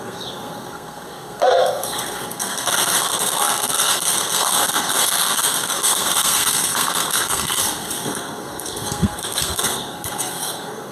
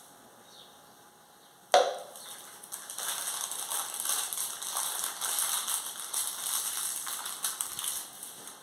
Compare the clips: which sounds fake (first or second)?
first